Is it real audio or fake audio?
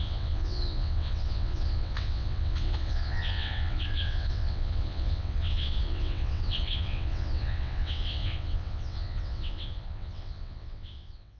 fake